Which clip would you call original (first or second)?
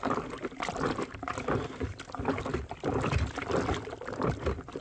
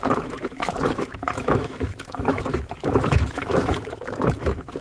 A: first